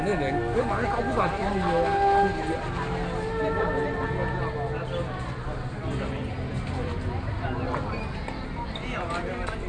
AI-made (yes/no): no